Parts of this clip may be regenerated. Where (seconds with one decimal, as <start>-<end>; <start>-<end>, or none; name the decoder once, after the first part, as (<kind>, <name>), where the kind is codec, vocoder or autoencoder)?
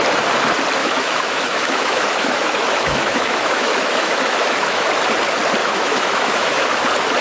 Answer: 0.8-4.9 (autoencoder, DAC-VAE); 5.6-6.8